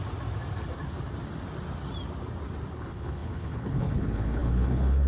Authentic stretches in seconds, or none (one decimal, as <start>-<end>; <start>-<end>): 0.0-2.7